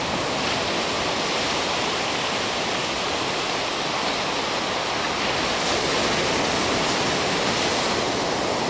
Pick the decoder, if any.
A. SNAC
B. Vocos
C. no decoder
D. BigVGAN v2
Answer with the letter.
C